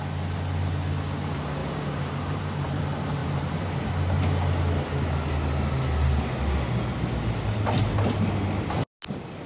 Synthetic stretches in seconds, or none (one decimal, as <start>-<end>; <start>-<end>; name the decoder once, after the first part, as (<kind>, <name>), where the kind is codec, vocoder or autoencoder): 1.6-2.8 (vocoder, BigVGAN v2); 3.2-3.9